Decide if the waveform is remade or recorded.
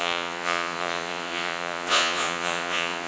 remade